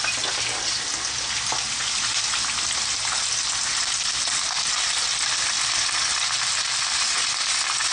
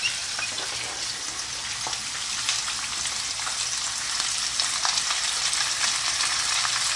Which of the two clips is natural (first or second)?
first